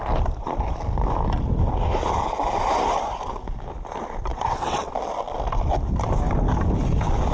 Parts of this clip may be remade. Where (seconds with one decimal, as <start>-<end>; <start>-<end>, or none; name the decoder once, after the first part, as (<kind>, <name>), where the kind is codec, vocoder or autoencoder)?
4.3-4.9 (vocoder, WaveNeXt)